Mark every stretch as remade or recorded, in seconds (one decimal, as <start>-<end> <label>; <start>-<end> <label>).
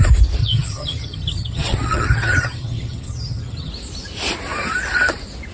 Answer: 0.0-0.4 recorded; 0.4-3.7 remade; 3.7-5.5 recorded